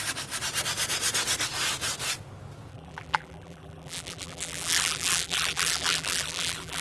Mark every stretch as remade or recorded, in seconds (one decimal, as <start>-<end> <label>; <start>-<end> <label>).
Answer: 0.0-2.7 recorded; 2.7-6.8 remade